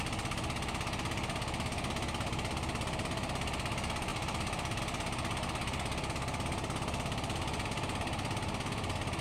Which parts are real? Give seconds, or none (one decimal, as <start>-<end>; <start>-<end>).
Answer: 0.0-4.1; 4.8-9.2